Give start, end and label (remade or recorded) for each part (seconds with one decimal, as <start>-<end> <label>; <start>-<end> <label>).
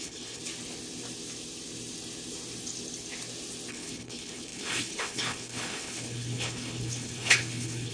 0.0-0.4 remade; 0.4-3.7 recorded; 3.7-7.9 remade